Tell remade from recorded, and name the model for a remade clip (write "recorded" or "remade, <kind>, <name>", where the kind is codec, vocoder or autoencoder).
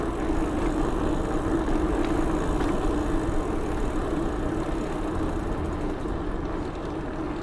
recorded